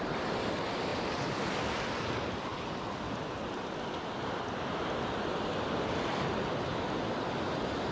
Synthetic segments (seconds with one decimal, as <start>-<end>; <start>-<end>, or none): none